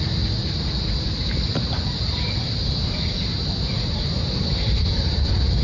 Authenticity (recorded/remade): remade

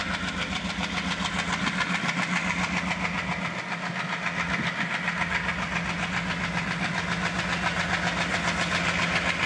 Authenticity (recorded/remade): recorded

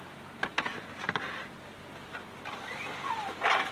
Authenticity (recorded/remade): recorded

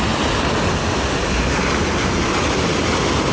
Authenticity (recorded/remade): recorded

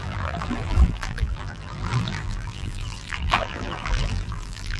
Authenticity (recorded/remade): remade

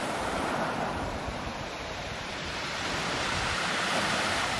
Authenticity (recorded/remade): remade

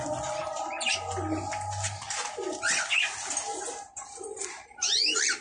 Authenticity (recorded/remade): recorded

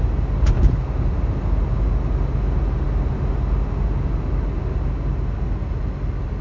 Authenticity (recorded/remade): recorded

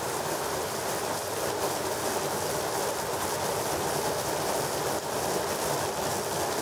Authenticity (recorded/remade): recorded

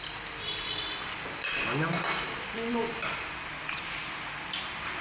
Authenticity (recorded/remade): remade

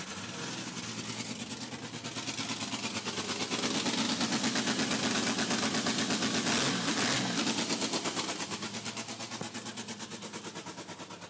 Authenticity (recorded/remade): recorded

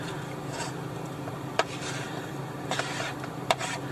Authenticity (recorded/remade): remade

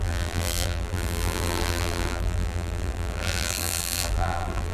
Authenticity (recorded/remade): remade